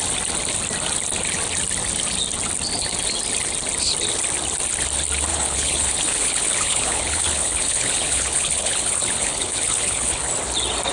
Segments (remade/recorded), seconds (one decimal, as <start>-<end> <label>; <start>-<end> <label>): 0.0-5.3 recorded; 5.3-10.3 remade; 10.3-10.9 recorded